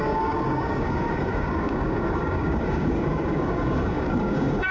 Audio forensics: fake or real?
fake